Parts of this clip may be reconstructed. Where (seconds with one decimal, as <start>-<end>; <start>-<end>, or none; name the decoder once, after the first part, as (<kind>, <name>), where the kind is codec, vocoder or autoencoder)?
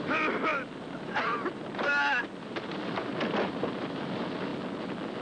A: 0.0-4.5 (vocoder, BigVGAN v2)